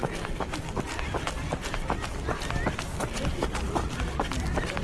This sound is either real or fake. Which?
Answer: real